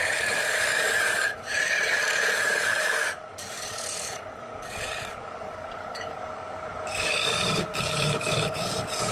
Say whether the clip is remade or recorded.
remade